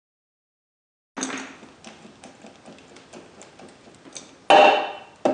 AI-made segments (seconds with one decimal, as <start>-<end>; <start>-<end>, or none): none